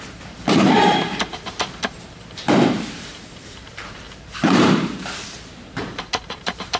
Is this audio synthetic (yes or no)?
yes